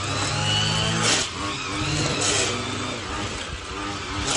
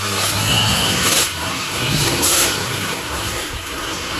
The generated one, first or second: second